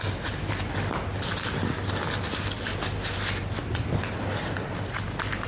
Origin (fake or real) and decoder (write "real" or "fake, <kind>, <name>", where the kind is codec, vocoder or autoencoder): real